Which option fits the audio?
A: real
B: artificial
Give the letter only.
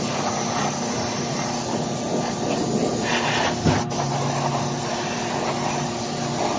A